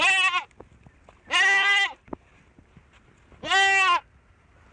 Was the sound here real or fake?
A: real